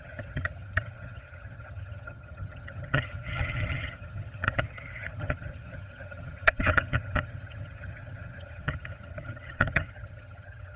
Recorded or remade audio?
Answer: remade